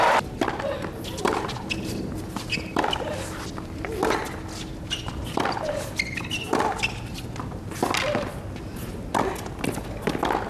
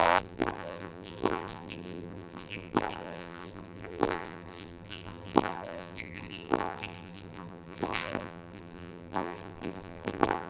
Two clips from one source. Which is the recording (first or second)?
first